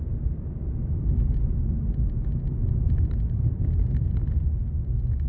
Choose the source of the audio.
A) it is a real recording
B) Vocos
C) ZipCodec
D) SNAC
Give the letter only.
A